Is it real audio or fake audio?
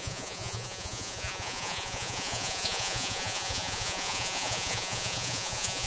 fake